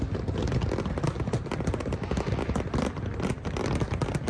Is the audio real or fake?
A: real